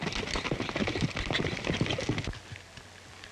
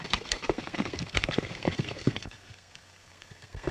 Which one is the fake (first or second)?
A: second